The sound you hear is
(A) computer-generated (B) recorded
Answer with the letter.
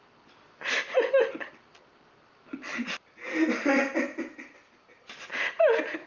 B